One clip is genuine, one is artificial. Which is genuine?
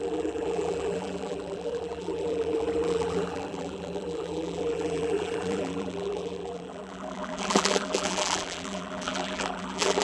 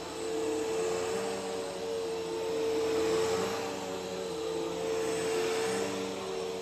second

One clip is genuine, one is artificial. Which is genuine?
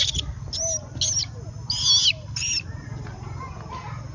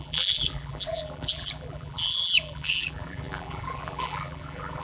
first